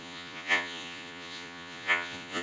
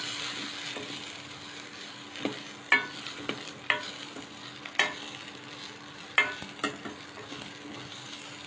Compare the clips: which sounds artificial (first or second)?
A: first